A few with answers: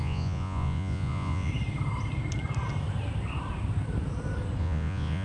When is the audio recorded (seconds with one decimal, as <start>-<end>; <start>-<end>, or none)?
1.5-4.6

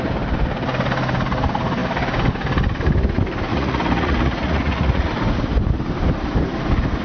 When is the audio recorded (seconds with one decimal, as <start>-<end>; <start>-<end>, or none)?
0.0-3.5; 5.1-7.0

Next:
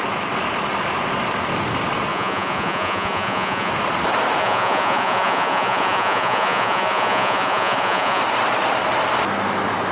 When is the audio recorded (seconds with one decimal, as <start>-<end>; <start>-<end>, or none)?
0.0-2.1; 3.7-4.4; 8.2-9.9

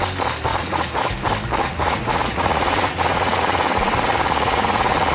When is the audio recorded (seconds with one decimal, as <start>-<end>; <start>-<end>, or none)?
0.0-0.5; 1.0-1.6

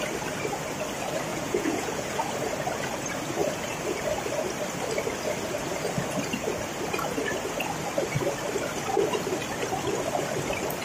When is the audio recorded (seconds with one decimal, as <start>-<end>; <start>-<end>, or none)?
0.0-1.3; 2.2-10.8

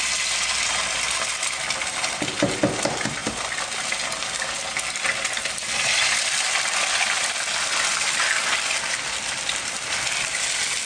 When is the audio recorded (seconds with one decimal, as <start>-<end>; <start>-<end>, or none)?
0.0-10.9